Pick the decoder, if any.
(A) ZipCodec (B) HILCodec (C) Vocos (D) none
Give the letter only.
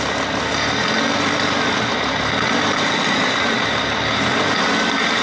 D